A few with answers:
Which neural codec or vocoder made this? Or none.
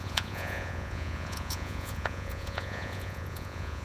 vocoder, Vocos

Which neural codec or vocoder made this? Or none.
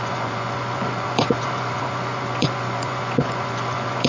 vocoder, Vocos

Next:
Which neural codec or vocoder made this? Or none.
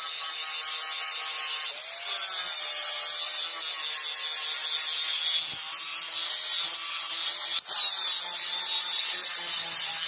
none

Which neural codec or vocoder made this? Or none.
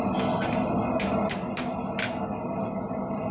none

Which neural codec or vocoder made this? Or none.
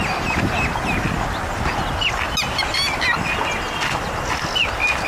none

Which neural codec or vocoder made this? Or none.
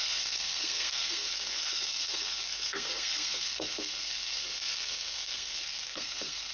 codec, SNAC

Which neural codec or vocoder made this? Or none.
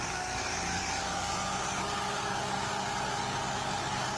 codec, DAC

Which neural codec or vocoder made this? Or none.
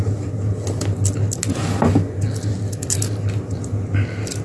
none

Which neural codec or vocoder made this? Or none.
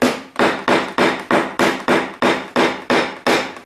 none